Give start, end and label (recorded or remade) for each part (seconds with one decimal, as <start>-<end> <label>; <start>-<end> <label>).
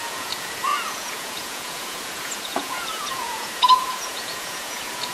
0.0-5.1 remade